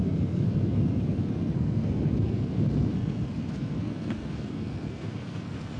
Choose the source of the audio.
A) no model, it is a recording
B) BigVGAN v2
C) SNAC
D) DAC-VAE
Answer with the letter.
C